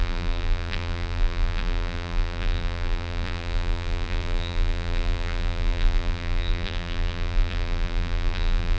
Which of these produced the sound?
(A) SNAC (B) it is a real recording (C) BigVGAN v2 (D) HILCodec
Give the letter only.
C